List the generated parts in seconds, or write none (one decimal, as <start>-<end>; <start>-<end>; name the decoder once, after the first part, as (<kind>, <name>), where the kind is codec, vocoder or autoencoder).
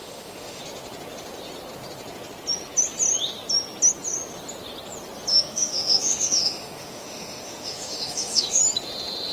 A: 0.0-0.6 (autoencoder, DAC-VAE); 5.3-8.6